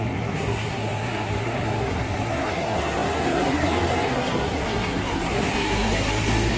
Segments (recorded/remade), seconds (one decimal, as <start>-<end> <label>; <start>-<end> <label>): 0.0-6.6 remade